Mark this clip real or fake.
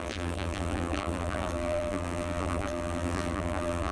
fake